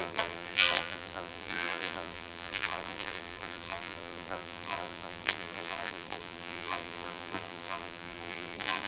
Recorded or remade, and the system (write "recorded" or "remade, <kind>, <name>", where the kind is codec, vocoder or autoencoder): remade, vocoder, BigVGAN v2